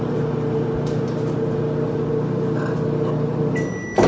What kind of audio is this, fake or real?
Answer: real